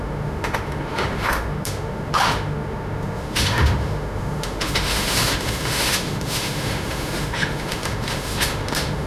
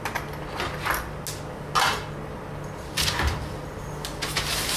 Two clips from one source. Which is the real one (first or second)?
second